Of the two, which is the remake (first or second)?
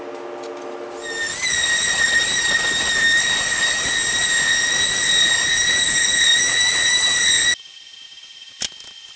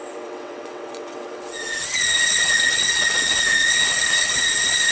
second